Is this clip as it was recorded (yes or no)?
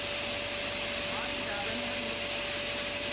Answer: yes